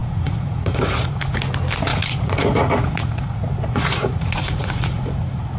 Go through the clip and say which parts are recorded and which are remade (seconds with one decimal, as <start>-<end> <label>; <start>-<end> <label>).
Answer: 0.0-1.4 remade; 1.4-1.9 recorded; 1.9-5.6 remade